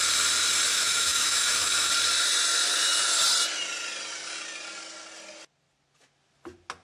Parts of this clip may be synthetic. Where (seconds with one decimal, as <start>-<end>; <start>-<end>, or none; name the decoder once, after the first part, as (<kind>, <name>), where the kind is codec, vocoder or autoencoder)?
0.7-1.9 (autoencoder, DAC-VAE)